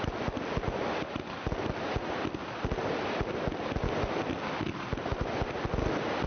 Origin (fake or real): real